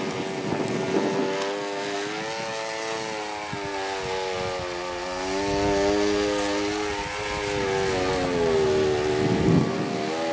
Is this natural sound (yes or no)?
yes